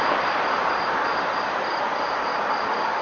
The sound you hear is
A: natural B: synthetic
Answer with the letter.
A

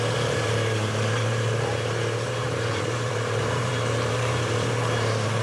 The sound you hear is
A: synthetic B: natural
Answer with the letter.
A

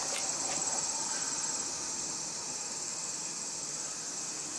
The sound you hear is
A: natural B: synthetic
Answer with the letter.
B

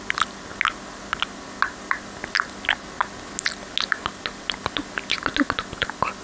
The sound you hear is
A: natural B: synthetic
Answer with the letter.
A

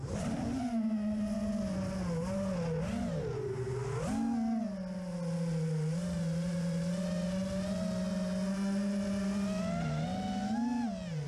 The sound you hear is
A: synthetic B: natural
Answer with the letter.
B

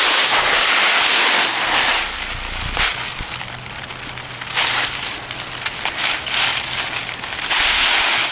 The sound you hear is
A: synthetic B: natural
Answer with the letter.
B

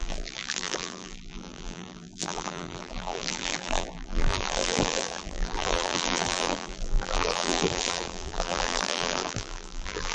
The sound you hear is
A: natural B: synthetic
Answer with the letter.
B